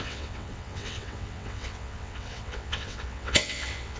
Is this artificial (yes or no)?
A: yes